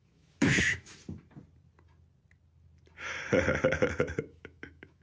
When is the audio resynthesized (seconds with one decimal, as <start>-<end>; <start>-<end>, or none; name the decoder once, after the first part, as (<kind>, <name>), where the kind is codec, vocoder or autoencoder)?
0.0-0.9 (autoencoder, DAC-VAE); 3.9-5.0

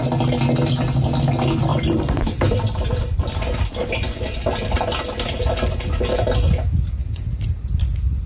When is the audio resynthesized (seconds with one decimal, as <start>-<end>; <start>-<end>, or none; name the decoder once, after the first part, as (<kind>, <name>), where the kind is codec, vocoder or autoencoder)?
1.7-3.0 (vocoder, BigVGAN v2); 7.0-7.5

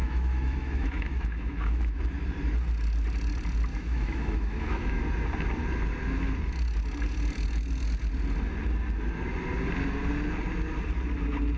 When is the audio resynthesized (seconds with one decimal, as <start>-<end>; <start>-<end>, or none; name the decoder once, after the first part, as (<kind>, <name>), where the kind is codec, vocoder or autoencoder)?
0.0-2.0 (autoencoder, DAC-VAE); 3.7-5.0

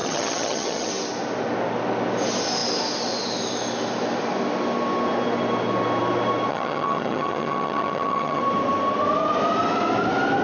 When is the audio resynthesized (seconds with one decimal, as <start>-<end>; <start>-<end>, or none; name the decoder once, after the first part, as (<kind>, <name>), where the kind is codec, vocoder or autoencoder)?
0.0-0.9 (vocoder, HiFi-GAN); 6.5-8.4

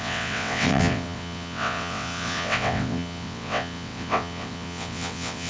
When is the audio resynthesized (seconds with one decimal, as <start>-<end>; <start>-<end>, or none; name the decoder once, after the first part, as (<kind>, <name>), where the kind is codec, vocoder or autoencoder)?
0.0-5.5 (vocoder, WaveNeXt)

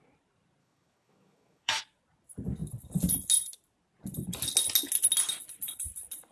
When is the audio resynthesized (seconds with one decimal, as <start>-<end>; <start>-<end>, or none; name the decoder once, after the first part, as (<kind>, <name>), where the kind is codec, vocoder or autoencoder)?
0.6-1.8 (autoencoder, DAC-VAE)

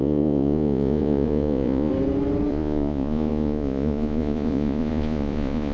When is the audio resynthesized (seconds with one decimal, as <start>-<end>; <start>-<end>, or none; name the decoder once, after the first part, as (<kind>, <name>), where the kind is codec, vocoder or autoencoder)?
0.0-1.9 (vocoder, Vocos); 2.5-5.7